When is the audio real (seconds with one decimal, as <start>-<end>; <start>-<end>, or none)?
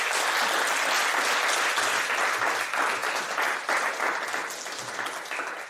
0.0-5.7